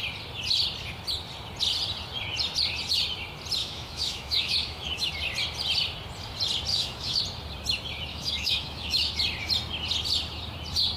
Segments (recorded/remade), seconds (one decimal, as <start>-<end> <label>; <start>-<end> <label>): 0.0-3.6 recorded; 3.6-5.1 remade; 5.1-6.7 recorded; 6.7-7.2 remade; 7.2-8.1 recorded; 8.1-9.1 remade; 9.1-11.0 recorded